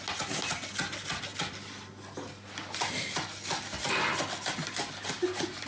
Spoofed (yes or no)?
no